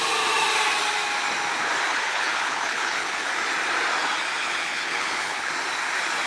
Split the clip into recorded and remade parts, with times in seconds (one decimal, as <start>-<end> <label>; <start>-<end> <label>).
0.0-1.9 recorded; 1.9-3.3 remade; 3.3-4.4 recorded; 4.4-5.5 remade; 5.5-6.3 recorded